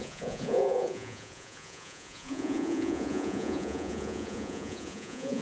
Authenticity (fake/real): fake